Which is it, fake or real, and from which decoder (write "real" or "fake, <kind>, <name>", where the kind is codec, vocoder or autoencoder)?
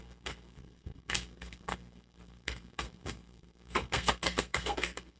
fake, codec, SNAC